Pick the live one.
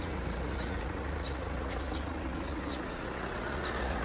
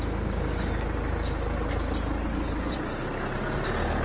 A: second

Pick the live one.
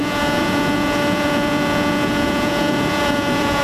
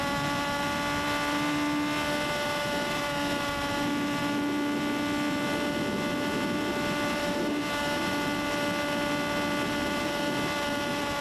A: second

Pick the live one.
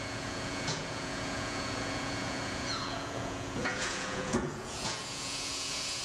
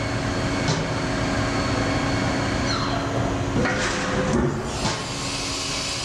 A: second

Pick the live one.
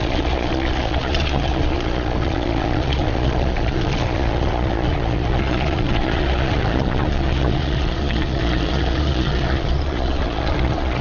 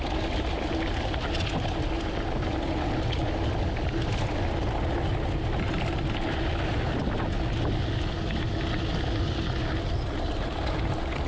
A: second